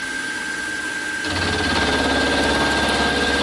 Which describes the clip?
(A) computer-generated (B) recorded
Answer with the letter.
B